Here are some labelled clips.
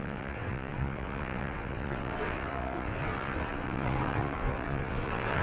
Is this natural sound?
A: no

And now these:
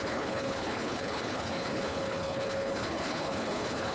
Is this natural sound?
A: no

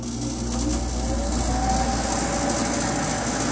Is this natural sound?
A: yes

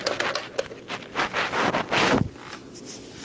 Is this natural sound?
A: yes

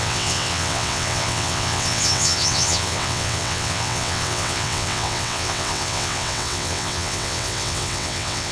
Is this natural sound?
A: no